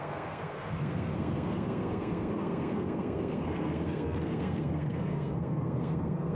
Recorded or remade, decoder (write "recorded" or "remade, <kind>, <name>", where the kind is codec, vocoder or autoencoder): remade, codec, SNAC